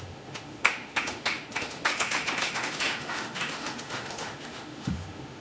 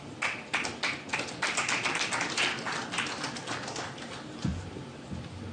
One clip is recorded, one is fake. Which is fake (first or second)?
first